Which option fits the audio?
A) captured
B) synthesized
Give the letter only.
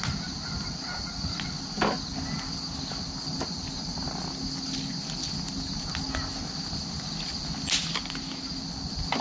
A